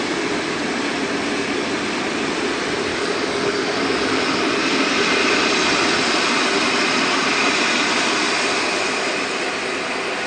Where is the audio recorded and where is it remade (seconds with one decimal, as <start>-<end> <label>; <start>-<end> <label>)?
0.0-2.9 recorded; 2.9-4.4 remade; 4.4-10.3 recorded